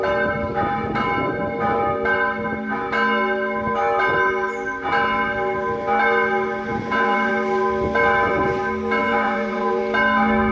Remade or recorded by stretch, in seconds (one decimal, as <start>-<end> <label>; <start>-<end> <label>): 0.0-6.7 recorded; 6.7-7.3 remade; 7.3-9.0 recorded; 9.0-9.8 remade; 9.8-10.5 recorded

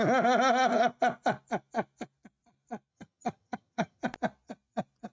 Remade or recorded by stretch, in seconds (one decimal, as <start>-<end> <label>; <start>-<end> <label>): 0.0-2.9 recorded; 2.9-4.0 remade; 4.0-5.1 recorded

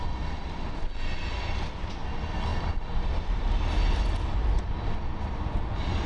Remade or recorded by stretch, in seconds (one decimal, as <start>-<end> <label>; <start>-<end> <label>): 0.0-2.5 recorded; 2.5-3.6 remade; 3.6-4.4 recorded; 4.4-4.9 remade; 4.9-6.1 recorded

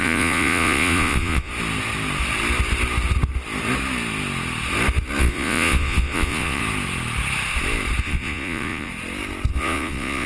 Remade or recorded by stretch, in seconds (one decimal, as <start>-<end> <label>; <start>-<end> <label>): 0.0-1.5 remade; 1.5-5.2 recorded; 5.2-6.6 remade; 6.6-8.0 recorded; 8.0-8.9 remade; 8.9-9.5 recorded; 9.5-10.3 remade

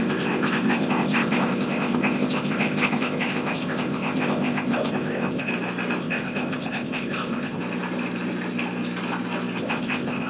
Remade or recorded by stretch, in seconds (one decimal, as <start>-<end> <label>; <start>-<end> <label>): 0.0-5.5 remade; 5.5-6.0 recorded; 6.0-7.6 remade; 7.6-9.6 recorded; 9.6-10.3 remade

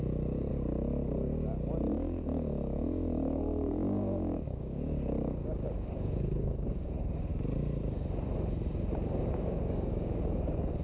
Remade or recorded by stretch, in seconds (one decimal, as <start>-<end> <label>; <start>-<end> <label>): 0.0-0.5 remade; 0.5-1.9 recorded; 1.9-7.3 remade; 7.3-9.3 recorded; 9.3-10.8 remade

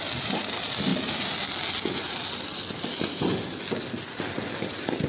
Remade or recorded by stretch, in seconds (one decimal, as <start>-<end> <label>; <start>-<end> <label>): 0.0-5.1 recorded